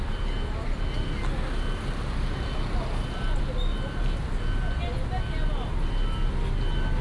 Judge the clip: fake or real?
real